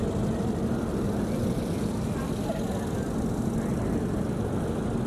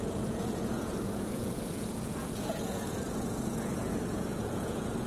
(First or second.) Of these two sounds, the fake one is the second